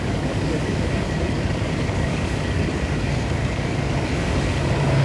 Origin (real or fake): fake